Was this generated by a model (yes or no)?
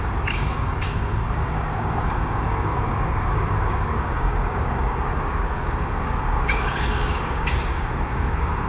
yes